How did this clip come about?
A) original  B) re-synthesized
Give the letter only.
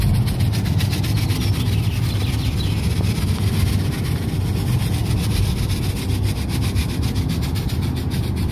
A